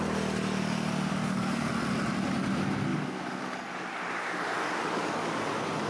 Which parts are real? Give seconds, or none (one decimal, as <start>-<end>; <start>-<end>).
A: 0.0-1.1; 1.7-2.9; 5.4-5.9